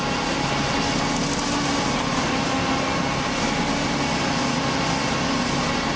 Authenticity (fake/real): real